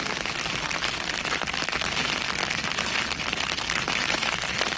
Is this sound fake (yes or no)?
no